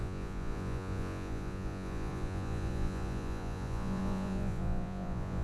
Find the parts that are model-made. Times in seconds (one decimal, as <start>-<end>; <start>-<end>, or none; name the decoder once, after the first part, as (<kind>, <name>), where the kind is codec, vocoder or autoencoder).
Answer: 0.0-5.4 (vocoder, Vocos)